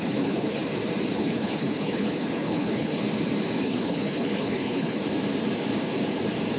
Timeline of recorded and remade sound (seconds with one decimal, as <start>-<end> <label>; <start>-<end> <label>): 0.0-0.6 remade; 0.6-1.1 recorded; 1.1-3.0 remade; 3.0-3.6 recorded; 3.6-5.0 remade; 5.0-6.6 recorded